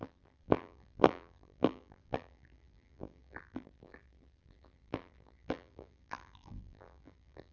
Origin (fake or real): fake